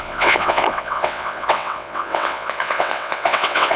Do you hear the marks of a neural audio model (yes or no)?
yes